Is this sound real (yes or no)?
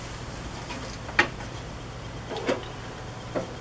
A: yes